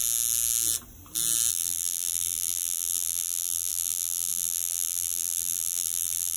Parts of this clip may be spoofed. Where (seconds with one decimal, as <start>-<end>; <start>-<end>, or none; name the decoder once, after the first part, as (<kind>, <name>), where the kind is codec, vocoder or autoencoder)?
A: 1.5-6.4 (vocoder, BigVGAN v2)